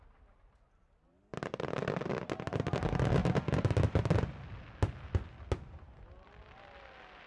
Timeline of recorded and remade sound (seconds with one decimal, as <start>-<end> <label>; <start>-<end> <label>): 0.0-7.3 recorded